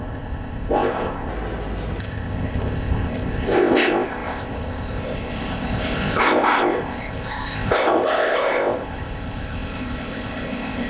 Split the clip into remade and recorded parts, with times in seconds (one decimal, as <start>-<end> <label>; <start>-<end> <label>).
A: 0.0-1.3 remade; 1.3-2.0 recorded; 2.0-10.9 remade